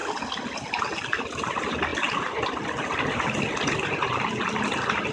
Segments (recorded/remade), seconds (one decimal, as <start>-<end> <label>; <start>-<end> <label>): 0.0-5.1 recorded